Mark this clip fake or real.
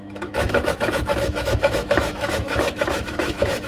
fake